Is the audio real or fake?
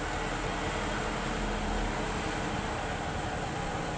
real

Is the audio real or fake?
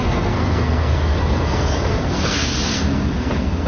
fake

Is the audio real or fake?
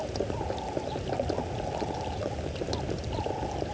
real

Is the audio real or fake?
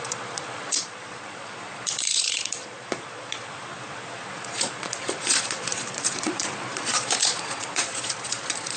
fake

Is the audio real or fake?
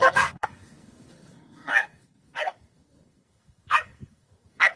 fake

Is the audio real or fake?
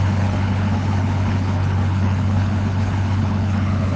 fake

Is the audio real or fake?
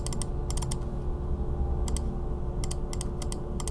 real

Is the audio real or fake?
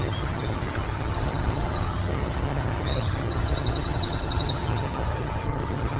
fake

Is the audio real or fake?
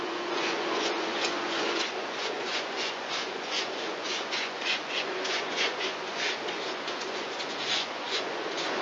fake